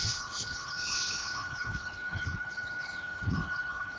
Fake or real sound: fake